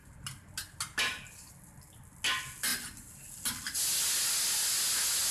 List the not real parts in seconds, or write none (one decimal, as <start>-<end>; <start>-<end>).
none